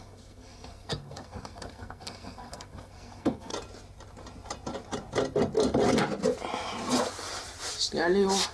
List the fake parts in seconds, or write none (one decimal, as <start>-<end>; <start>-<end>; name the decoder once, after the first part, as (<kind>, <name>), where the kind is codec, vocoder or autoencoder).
0.0-3.5 (codec, SNAC)

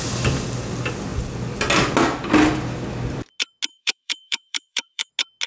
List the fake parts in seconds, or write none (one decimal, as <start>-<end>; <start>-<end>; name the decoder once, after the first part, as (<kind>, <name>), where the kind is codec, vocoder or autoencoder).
3.7-5.1 (autoencoder, DAC-VAE)

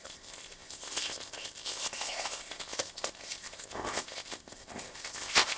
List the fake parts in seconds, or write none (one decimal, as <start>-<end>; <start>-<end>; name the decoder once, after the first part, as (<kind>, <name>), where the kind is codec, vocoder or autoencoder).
0.0-5.6 (codec, ZipCodec)

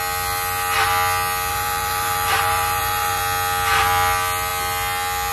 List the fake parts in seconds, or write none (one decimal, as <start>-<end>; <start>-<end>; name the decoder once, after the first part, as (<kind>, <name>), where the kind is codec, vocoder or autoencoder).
1.5-3.2 (vocoder, BigVGAN v2)

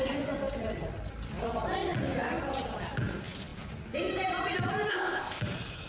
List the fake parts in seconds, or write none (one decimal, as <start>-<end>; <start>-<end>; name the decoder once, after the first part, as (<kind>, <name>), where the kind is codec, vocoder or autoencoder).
4.9-5.4 (codec, ZipCodec)

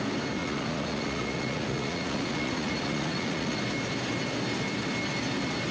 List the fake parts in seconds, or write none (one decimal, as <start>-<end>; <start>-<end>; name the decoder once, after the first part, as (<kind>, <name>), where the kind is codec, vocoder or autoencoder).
0.4-3.6 (vocoder, Vocos)